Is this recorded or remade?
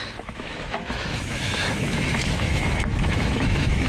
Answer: remade